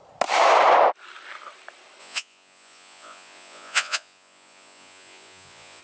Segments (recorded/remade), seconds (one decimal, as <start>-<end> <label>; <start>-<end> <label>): 0.0-2.0 recorded; 2.0-5.8 remade